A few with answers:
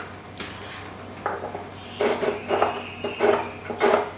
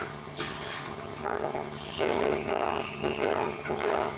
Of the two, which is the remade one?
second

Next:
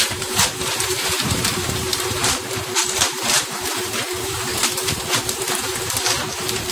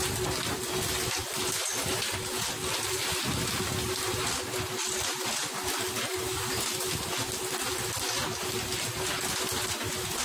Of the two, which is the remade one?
first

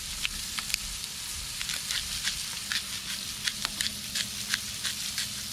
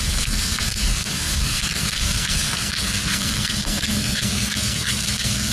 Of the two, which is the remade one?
second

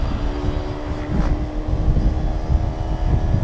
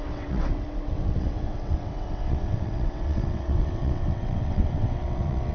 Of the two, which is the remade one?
second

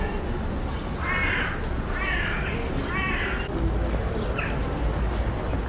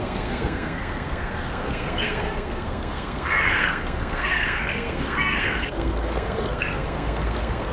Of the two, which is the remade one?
second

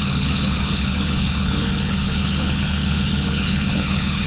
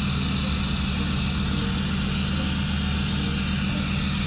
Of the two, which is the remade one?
first